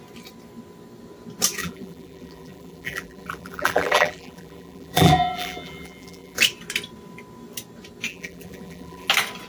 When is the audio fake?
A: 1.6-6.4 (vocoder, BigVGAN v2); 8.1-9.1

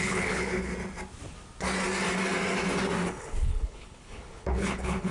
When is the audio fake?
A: 0.0-0.7 (codec, HILCodec); 3.1-5.1

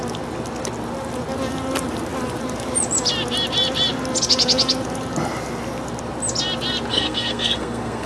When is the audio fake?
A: 6.9-8.1 (codec, SNAC)

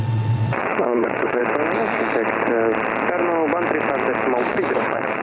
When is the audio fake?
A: 0.0-1.4 (vocoder, WaveNeXt); 4.5-5.2